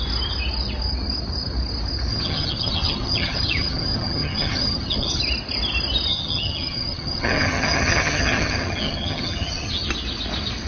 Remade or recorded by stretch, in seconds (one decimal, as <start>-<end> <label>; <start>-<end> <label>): 0.0-2.1 recorded; 2.1-5.2 remade; 5.2-6.1 recorded; 6.1-9.9 remade; 9.9-10.7 recorded